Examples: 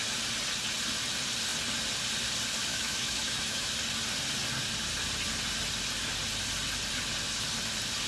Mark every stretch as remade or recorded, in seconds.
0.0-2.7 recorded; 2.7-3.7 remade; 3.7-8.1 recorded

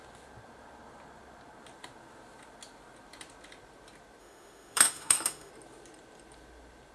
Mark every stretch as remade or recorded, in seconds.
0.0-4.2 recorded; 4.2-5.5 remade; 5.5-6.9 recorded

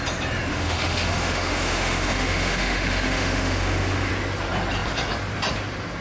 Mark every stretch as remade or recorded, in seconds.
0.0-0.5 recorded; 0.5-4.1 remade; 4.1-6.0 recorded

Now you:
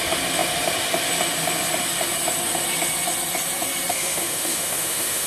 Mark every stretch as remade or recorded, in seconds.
0.0-3.9 recorded; 3.9-5.3 remade

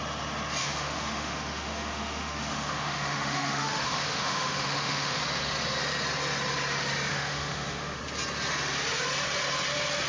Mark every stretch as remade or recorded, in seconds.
0.0-0.6 recorded; 0.6-5.2 remade; 5.2-7.1 recorded; 7.1-8.0 remade; 8.0-10.1 recorded

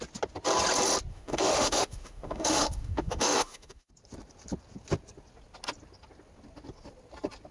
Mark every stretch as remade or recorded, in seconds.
0.0-1.1 recorded; 1.1-3.9 remade; 3.9-7.5 recorded

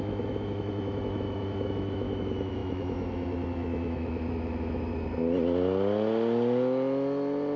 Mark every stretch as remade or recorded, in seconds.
0.0-4.9 remade; 4.9-7.6 recorded

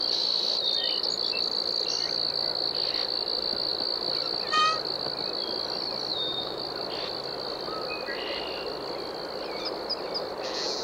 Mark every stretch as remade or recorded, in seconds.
0.0-6.1 recorded; 6.1-6.6 remade; 6.6-10.8 recorded